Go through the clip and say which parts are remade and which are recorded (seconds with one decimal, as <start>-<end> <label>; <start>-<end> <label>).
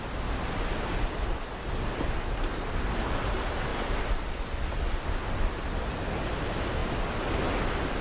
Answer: 0.0-8.0 recorded